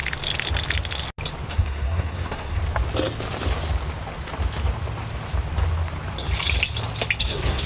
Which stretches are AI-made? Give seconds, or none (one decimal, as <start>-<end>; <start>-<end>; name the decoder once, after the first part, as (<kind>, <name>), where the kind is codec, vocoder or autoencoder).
1.5-2.6 (codec, SNAC); 7.2-7.7